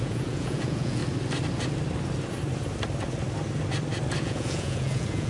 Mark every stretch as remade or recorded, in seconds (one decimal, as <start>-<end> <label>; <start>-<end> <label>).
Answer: 0.0-1.0 remade; 1.0-4.2 recorded; 4.2-5.3 remade